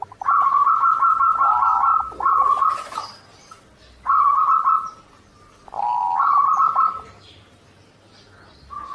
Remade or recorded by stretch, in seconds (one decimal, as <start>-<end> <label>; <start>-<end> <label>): 0.0-8.9 recorded